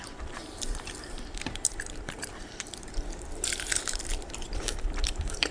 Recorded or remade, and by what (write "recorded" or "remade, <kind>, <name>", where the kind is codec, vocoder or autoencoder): remade, vocoder, BigVGAN v2